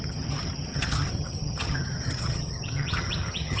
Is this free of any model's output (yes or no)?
no